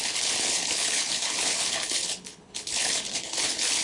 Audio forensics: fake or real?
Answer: fake